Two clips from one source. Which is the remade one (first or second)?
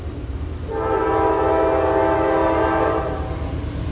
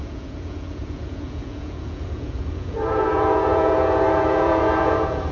second